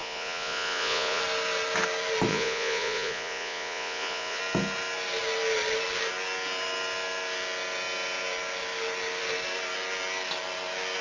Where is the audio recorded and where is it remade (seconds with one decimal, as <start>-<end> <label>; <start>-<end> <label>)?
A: 0.0-1.2 remade; 1.2-2.3 recorded; 2.3-4.4 remade; 4.4-11.0 recorded